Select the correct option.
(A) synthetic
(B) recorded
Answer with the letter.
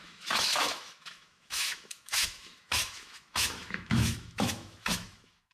A